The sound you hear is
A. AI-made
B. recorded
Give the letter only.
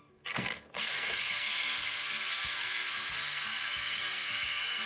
A